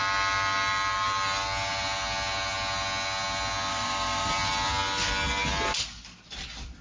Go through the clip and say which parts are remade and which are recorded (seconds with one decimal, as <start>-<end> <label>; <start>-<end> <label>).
0.0-3.7 recorded; 3.7-4.3 remade; 4.3-6.8 recorded